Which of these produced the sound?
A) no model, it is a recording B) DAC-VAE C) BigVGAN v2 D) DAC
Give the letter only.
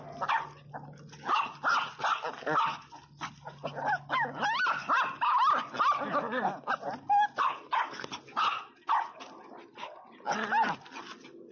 A